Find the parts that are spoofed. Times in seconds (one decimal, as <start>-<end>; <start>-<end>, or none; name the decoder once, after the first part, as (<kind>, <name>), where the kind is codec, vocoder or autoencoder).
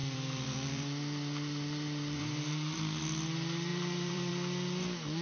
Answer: 0.0-3.0 (vocoder, BigVGAN v2); 3.7-4.3